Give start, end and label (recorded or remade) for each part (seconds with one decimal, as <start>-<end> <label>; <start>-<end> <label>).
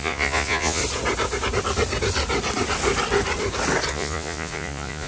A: 0.0-0.8 remade; 0.8-3.9 recorded; 3.9-5.1 remade